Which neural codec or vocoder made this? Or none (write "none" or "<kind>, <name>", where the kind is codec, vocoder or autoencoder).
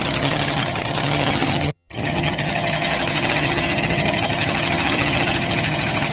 vocoder, HiFi-GAN